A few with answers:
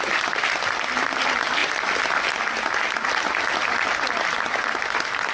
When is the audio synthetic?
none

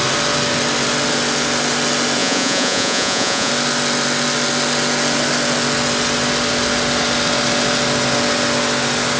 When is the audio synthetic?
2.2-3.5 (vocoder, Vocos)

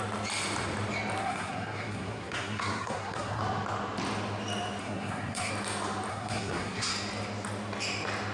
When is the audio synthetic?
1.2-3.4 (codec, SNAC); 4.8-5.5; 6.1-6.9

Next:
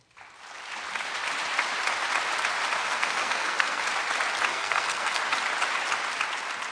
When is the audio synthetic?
2.8-3.8 (codec, SNAC); 4.5-5.2

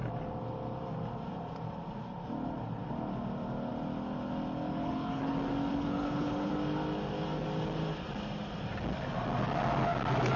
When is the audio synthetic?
4.7-5.3 (codec, HILCodec); 5.7-6.5

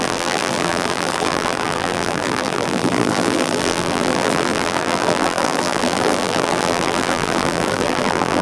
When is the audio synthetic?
0.0-8.4 (vocoder, BigVGAN v2)

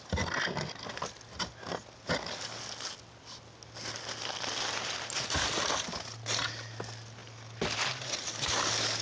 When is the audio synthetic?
none

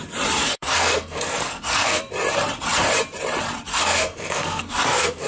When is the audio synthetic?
0.4-2.0 (codec, SNAC); 3.7-5.3